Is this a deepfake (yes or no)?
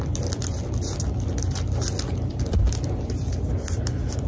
yes